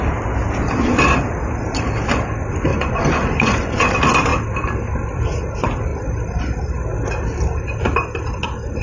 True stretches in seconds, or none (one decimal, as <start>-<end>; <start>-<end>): 0.0-2.7; 3.9-8.8